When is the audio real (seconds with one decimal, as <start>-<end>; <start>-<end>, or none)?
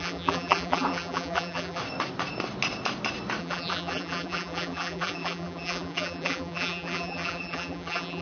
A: 1.8-3.4